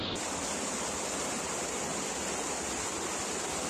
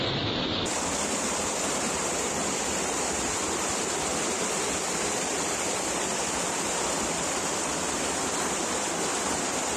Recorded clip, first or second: first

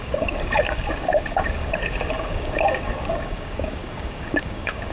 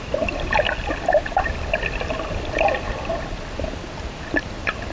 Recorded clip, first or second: second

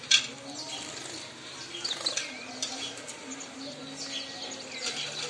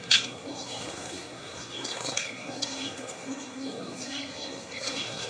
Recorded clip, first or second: first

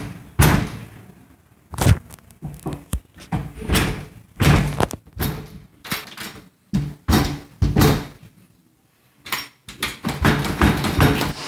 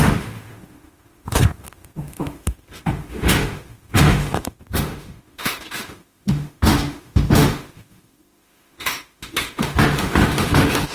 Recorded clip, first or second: first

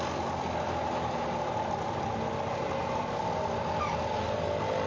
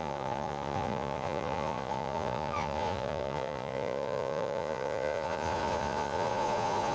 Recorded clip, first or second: first